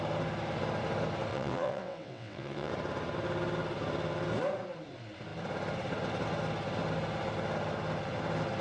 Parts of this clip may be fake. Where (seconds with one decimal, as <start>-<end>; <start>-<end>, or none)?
1.3-2.7